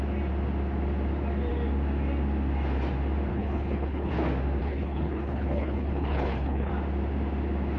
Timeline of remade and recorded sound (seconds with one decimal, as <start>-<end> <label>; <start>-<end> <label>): 0.0-3.3 recorded; 3.3-4.1 remade; 4.1-4.6 recorded; 4.6-6.7 remade; 6.7-7.8 recorded